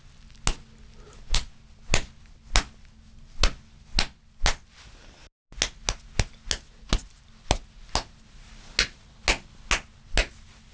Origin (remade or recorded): recorded